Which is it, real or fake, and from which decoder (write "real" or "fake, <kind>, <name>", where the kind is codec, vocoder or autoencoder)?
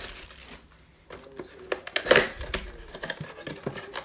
real